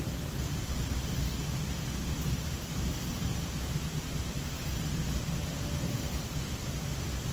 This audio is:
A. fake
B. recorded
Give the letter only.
B